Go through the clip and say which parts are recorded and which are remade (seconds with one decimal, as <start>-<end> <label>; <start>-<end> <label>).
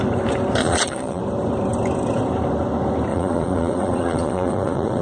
0.0-0.6 recorded; 0.6-1.2 remade; 1.2-3.1 recorded; 3.1-5.0 remade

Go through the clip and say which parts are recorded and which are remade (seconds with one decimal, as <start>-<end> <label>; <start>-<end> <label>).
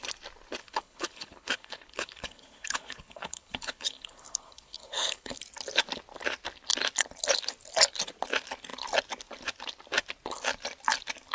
0.0-0.6 recorded; 0.6-5.4 remade; 5.4-11.3 recorded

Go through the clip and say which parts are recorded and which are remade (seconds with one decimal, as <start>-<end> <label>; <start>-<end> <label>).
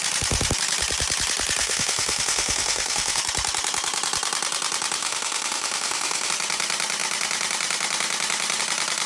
0.0-1.6 recorded; 1.6-3.2 remade; 3.2-5.0 recorded; 5.0-6.3 remade; 6.3-9.1 recorded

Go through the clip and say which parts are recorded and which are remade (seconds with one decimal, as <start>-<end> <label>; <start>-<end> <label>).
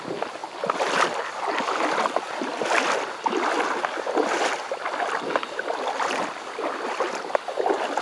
0.0-8.0 recorded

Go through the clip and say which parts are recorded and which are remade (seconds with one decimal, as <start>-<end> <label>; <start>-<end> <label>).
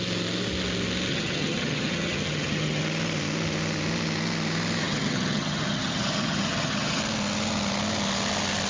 0.0-1.1 recorded; 1.1-2.8 remade; 2.8-4.8 recorded; 4.8-7.0 remade; 7.0-8.7 recorded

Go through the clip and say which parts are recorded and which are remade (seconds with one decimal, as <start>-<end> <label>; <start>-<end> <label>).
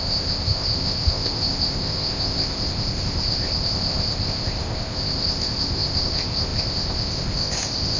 0.0-8.0 remade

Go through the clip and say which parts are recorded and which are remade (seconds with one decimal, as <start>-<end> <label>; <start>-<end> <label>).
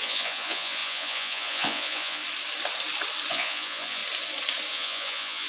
0.0-2.2 remade; 2.2-3.3 recorded; 3.3-4.0 remade; 4.0-4.7 recorded; 4.7-5.5 remade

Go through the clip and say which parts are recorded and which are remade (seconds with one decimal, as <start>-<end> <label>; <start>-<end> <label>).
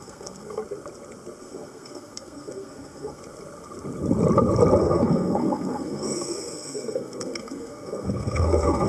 0.0-0.6 remade; 0.6-1.4 recorded; 1.4-3.2 remade; 3.2-4.8 recorded; 4.8-8.9 remade